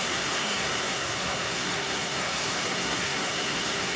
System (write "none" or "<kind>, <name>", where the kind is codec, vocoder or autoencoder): codec, SNAC